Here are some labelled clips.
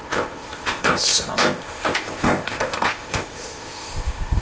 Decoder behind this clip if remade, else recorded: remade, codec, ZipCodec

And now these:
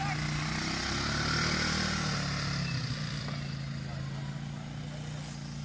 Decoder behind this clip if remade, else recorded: recorded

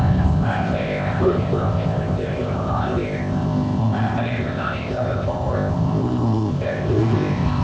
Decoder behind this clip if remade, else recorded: remade, codec, ZipCodec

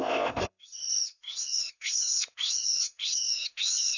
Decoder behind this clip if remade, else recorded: remade, codec, ZipCodec